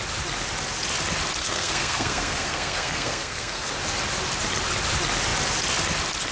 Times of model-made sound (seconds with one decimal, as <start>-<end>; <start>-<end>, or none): 1.4-3.7